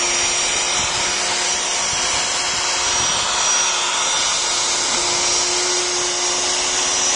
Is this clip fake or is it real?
real